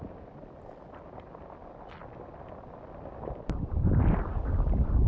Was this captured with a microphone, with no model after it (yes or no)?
yes